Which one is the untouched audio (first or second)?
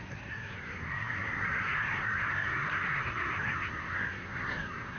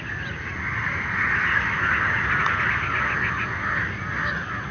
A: second